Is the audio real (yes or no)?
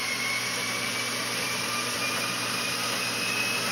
no